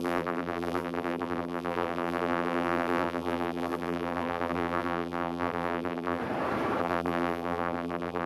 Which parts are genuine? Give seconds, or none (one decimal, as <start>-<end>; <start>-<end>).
6.2-6.8